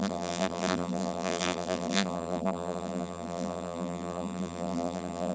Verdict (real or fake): fake